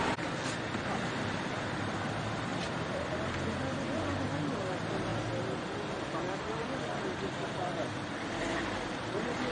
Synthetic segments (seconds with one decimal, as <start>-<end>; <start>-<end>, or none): none